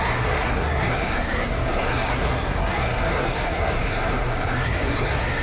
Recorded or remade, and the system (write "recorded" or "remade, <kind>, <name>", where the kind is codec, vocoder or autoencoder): remade, codec, SNAC